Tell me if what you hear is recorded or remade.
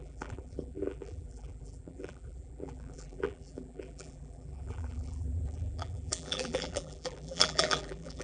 remade